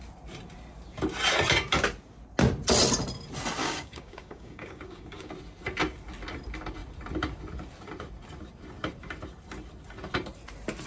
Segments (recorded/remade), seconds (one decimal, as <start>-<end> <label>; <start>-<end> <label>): 0.0-3.6 recorded; 3.6-5.3 remade; 5.3-10.9 recorded